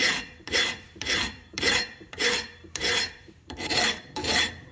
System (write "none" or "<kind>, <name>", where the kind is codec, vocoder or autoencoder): vocoder, BigVGAN v2